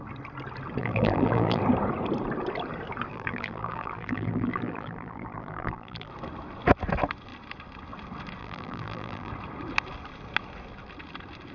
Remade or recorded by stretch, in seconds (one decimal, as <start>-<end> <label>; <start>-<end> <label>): 0.0-0.8 recorded; 0.8-1.6 remade; 1.6-3.1 recorded; 3.1-6.1 remade; 6.1-8.4 recorded; 8.4-9.3 remade; 9.3-11.5 recorded